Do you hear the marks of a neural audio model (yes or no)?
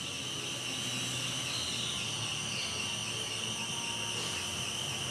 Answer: no